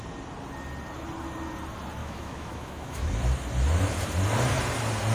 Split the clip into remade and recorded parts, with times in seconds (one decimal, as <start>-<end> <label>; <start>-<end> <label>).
0.0-2.0 recorded; 2.0-3.1 remade; 3.1-5.1 recorded